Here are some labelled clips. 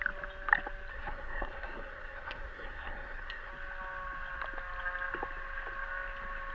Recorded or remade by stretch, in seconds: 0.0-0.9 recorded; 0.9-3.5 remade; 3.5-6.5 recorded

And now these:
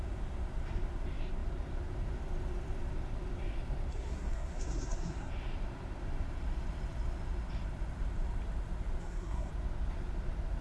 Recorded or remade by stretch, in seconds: 0.0-3.9 recorded; 3.9-5.3 remade; 5.3-9.0 recorded; 9.0-9.5 remade; 9.5-10.6 recorded